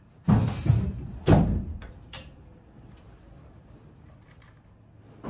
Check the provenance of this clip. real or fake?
real